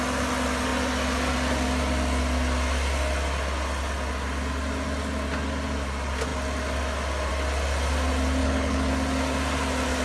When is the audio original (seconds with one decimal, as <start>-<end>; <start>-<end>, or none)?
0.0-8.4; 8.9-10.0